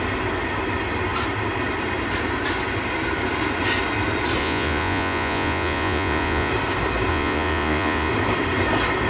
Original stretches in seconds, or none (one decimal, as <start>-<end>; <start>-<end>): 0.0-4.4; 6.5-7.1; 8.1-9.1